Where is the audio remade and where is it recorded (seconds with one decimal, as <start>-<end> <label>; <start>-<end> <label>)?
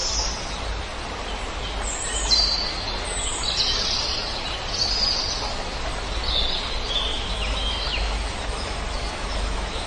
0.0-7.1 recorded; 7.1-9.9 remade